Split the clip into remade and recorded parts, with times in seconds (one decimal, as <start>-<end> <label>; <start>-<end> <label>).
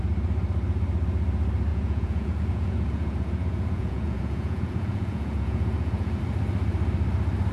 0.0-1.7 recorded; 1.7-6.2 remade; 6.2-7.5 recorded